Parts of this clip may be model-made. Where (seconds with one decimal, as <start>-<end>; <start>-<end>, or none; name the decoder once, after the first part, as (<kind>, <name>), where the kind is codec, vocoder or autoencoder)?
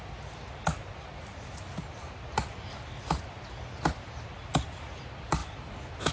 none